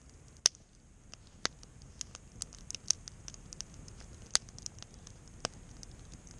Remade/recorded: recorded